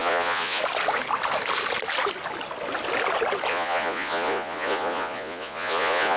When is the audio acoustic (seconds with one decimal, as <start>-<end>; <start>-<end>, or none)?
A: 0.6-3.5